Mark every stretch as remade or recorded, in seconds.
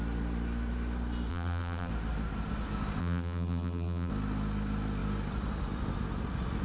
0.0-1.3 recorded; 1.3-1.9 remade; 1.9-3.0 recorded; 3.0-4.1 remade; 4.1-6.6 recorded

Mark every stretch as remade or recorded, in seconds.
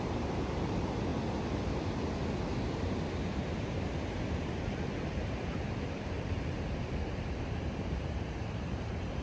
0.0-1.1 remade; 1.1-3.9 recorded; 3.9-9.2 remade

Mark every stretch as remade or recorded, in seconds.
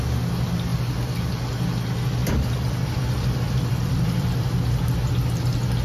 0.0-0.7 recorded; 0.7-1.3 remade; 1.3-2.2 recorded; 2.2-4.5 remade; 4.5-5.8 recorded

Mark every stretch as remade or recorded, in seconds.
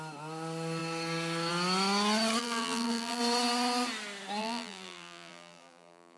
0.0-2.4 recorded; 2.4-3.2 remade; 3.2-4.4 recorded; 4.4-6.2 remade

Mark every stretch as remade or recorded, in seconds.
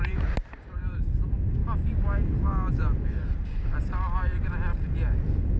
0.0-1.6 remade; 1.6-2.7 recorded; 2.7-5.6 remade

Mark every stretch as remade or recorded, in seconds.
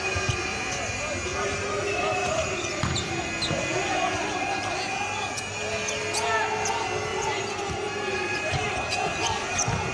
0.0-1.3 recorded; 1.3-3.1 remade; 3.1-4.2 recorded; 4.2-4.9 remade; 4.9-7.1 recorded; 7.1-8.9 remade; 8.9-9.9 recorded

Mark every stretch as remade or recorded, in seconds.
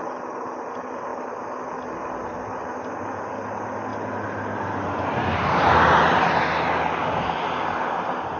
0.0-8.4 recorded